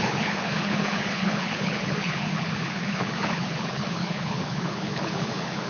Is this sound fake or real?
fake